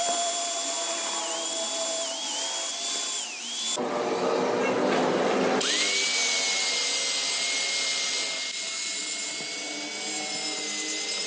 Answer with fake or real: real